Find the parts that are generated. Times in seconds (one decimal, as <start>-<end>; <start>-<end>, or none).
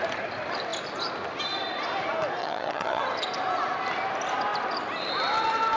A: 2.4-3.0